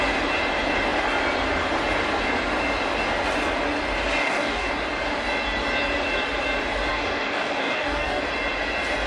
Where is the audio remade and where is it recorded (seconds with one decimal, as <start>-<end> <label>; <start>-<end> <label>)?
0.0-4.2 recorded; 4.2-4.7 remade; 4.7-6.9 recorded; 6.9-8.2 remade; 8.2-9.1 recorded